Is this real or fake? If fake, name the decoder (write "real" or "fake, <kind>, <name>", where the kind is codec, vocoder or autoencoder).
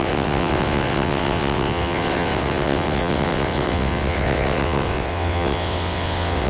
fake, vocoder, WaveNeXt